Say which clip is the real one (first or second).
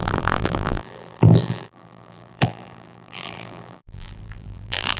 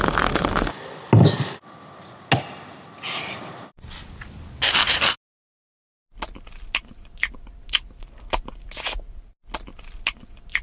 second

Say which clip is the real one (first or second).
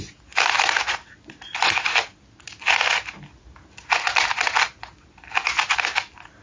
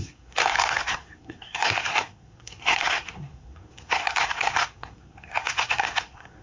first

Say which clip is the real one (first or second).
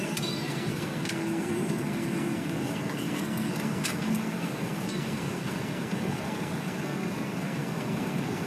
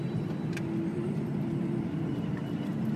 second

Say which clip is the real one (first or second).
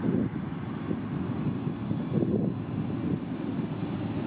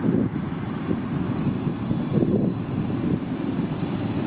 first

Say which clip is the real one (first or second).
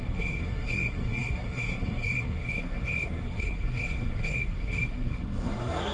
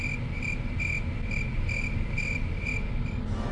second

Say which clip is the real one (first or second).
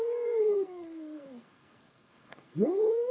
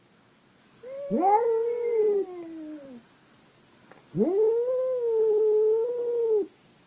second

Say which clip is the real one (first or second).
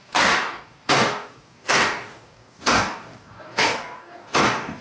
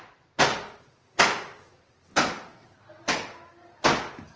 second